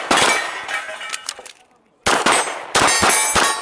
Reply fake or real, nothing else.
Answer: real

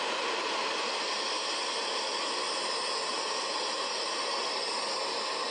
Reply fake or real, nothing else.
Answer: real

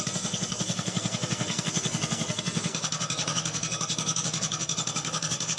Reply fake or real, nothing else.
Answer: fake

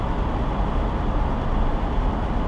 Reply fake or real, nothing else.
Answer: real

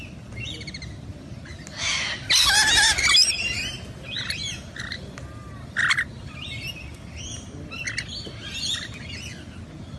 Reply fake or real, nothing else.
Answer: real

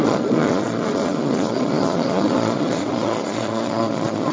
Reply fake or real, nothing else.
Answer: fake